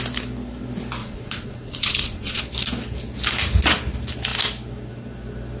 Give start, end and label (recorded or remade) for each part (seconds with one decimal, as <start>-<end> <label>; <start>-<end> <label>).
0.0-1.0 recorded; 1.0-2.4 remade; 2.4-5.6 recorded

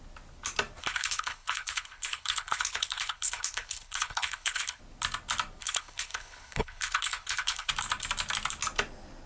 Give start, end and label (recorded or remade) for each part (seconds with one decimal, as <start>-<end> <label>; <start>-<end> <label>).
0.0-0.8 recorded; 0.8-4.8 remade; 4.8-5.6 recorded; 5.6-7.7 remade; 7.7-9.3 recorded

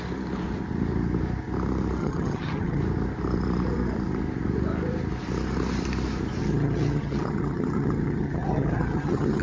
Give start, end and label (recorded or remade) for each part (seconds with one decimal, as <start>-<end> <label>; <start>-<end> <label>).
0.0-2.0 recorded; 2.0-2.8 remade; 2.8-6.4 recorded; 6.4-9.4 remade

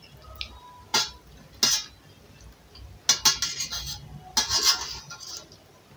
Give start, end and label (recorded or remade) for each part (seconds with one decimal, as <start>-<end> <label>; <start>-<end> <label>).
0.0-6.0 recorded

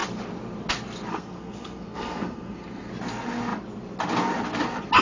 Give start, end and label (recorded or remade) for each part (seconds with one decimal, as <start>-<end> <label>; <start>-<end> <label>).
0.0-1.1 recorded; 1.1-2.9 remade; 2.9-5.0 recorded